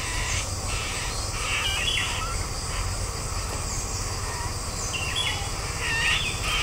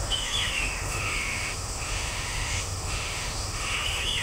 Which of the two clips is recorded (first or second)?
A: first